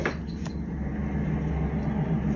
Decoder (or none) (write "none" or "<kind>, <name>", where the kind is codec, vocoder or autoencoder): none